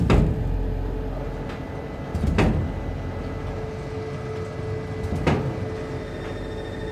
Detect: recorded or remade recorded